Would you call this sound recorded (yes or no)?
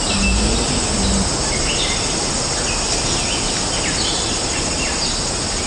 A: yes